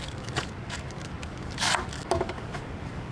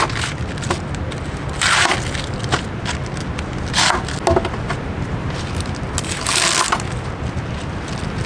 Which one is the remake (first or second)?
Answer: first